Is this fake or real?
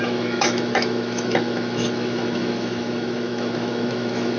fake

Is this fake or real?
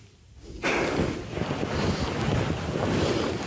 real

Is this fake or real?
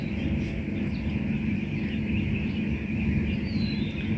real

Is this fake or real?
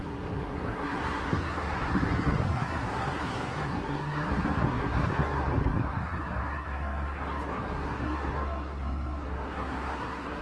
fake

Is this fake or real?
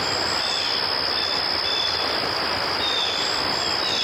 real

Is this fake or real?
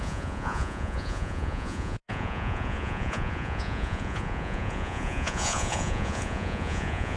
fake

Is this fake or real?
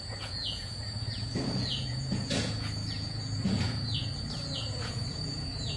fake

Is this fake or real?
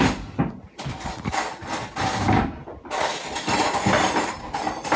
real